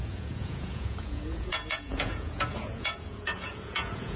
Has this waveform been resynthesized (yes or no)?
yes